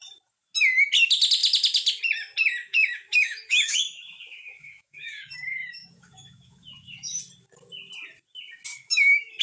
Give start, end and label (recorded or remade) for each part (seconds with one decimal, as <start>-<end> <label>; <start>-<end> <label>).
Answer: 0.0-2.6 recorded; 2.6-7.2 remade; 7.2-8.7 recorded; 8.7-9.4 remade